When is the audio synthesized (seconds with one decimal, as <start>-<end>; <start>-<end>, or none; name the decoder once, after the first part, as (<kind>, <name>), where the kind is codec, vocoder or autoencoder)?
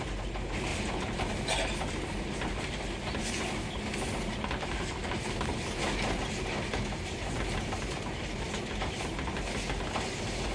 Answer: 0.7-2.5 (vocoder, BigVGAN v2)